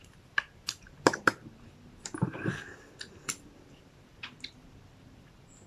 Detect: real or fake fake